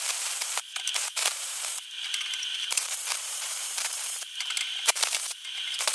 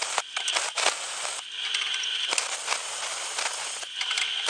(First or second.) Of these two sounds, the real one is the second